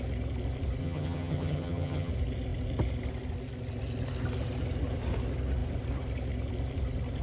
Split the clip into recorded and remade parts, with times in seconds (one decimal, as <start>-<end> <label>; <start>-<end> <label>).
0.0-0.8 recorded; 0.8-2.1 remade; 2.1-7.2 recorded